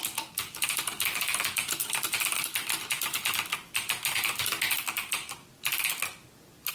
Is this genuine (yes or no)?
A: yes